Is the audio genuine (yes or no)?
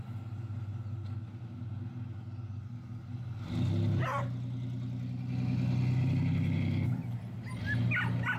yes